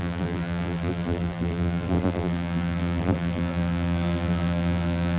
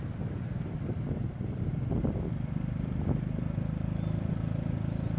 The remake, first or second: first